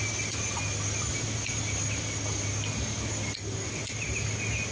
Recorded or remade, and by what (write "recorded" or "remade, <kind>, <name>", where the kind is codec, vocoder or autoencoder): recorded